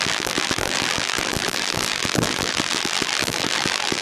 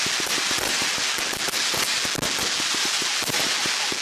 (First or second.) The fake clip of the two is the first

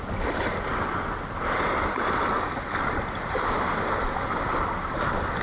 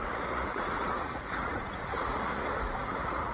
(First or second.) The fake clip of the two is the second